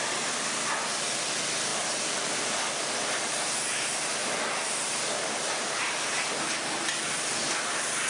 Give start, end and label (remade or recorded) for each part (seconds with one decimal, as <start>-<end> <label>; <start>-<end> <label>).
0.0-1.7 recorded; 1.7-2.7 remade; 2.7-4.2 recorded; 4.2-5.8 remade; 5.8-8.1 recorded